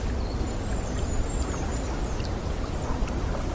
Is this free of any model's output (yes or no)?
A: yes